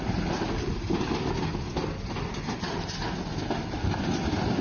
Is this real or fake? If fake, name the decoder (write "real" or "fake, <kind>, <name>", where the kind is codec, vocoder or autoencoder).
real